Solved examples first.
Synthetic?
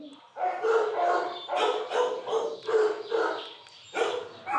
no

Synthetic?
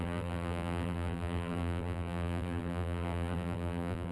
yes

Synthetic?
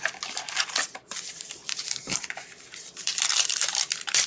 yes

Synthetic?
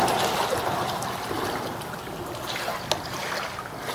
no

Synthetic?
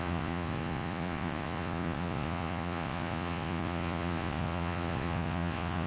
yes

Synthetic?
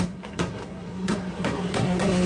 yes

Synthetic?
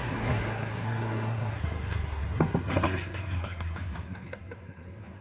yes